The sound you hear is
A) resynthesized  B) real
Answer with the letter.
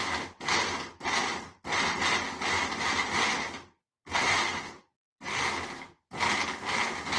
B